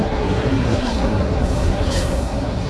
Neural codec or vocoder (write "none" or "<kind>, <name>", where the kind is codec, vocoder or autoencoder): codec, SNAC